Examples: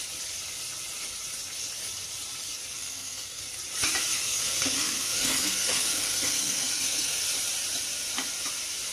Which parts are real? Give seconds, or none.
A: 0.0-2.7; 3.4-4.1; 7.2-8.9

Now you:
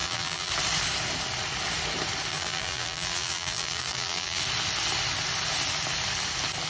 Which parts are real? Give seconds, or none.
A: 0.5-2.3; 4.4-6.7

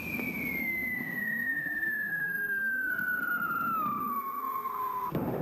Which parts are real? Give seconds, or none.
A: 0.0-0.6; 2.9-4.0

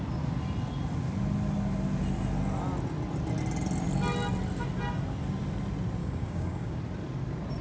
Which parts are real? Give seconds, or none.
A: 0.0-6.0; 6.8-7.6

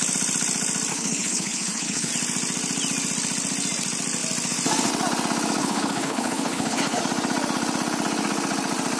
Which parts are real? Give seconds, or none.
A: 0.0-0.9; 2.1-5.6; 7.0-9.0

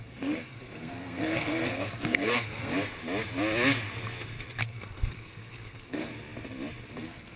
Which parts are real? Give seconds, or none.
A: 2.7-4.6; 6.1-6.9

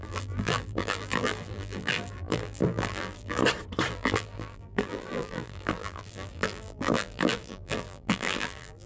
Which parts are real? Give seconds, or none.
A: 3.4-3.9